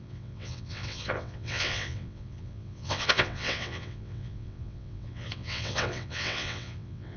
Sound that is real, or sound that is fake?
fake